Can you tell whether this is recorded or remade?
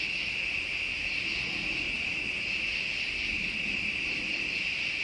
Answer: recorded